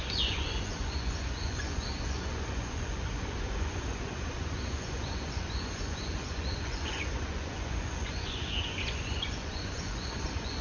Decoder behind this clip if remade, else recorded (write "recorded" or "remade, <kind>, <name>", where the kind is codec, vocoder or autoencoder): remade, vocoder, Vocos